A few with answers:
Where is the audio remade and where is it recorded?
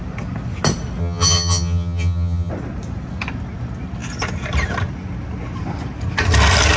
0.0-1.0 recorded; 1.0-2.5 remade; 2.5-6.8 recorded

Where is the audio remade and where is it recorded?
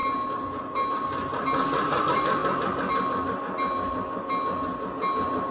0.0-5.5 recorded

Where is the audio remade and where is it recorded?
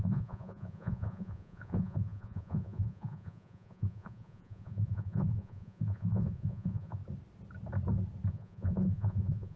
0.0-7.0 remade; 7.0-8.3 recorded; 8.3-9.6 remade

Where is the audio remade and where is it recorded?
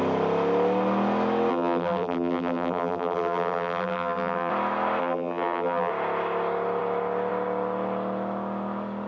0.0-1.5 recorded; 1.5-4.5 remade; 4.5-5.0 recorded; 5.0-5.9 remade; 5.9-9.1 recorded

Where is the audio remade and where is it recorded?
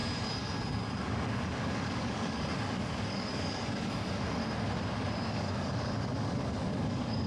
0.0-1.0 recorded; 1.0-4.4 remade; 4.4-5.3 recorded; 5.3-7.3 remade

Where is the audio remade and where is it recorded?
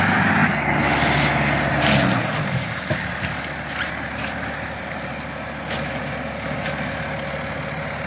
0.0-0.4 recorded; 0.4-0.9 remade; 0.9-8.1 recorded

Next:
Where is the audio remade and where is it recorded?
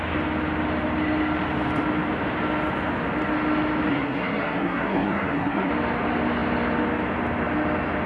0.0-3.9 recorded; 3.9-5.7 remade; 5.7-8.1 recorded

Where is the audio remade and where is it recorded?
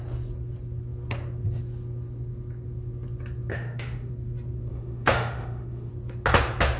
0.0-3.5 recorded; 3.5-4.1 remade; 4.1-4.7 recorded; 4.7-5.9 remade; 5.9-6.8 recorded